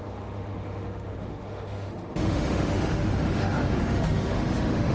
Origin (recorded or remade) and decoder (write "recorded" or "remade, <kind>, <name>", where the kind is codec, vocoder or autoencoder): remade, autoencoder, DAC-VAE